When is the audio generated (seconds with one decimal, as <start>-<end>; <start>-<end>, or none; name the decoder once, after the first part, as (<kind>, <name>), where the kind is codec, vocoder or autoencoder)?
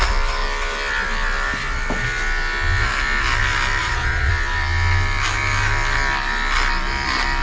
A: 3.8-4.3 (vocoder, Vocos)